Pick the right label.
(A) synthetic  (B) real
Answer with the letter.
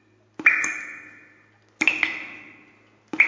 B